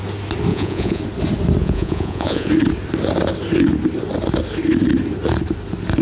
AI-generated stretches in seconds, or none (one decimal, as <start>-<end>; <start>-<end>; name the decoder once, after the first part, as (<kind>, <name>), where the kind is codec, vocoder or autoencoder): 0.5-1.0 (vocoder, Vocos); 1.6-2.5